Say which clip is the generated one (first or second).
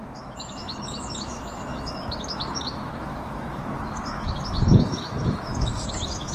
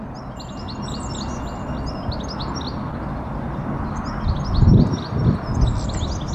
first